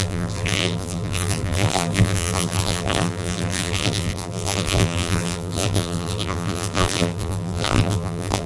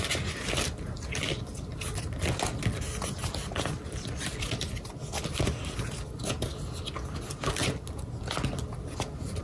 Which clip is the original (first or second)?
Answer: second